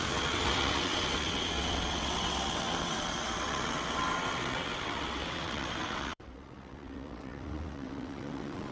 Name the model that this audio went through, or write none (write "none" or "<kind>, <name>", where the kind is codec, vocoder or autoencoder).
vocoder, WaveNeXt